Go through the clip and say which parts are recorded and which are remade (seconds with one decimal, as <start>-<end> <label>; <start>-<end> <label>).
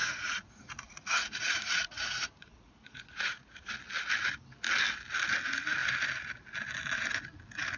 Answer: 0.0-3.7 remade; 3.7-7.8 recorded